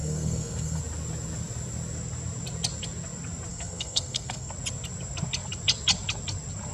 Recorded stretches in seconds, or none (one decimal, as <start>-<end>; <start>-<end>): 0.8-3.5; 4.5-6.7